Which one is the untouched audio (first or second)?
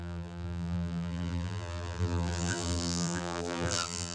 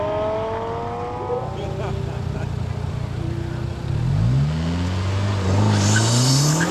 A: second